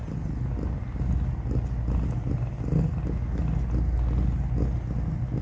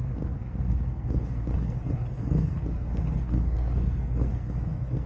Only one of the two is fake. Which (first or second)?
second